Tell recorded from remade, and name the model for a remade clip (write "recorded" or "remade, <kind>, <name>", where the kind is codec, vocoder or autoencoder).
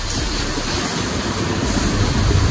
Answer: recorded